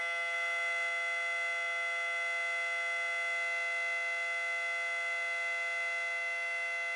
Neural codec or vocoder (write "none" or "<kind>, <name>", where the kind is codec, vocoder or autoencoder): none